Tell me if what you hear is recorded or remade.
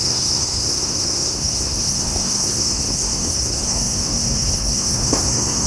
remade